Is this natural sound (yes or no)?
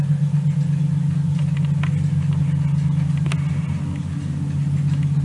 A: yes